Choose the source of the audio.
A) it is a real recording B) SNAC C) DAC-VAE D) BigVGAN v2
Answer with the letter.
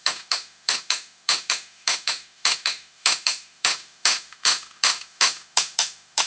C